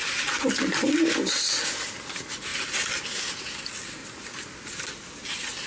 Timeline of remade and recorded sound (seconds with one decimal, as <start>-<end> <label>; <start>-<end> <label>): 0.0-2.5 recorded; 2.5-3.0 remade; 3.0-4.0 recorded; 4.0-4.9 remade; 4.9-5.7 recorded